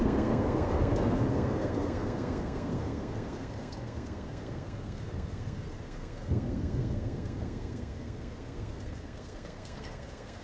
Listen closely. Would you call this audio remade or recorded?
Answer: remade